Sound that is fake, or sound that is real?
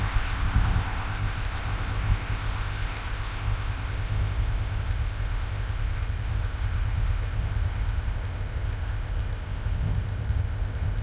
fake